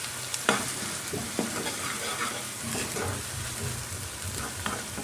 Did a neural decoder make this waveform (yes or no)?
no